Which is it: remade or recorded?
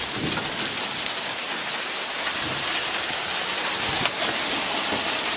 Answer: recorded